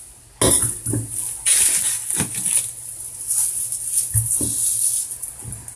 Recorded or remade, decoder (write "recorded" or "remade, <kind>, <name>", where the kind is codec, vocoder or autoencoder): recorded